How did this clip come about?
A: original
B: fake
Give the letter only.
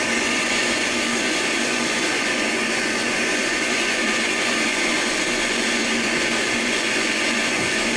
B